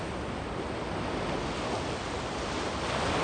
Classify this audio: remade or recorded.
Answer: recorded